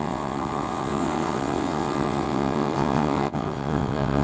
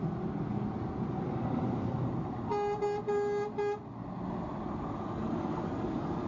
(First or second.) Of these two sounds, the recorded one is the second